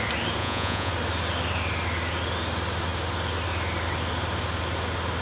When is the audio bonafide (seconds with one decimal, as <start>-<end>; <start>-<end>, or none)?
0.0-0.4; 0.9-5.2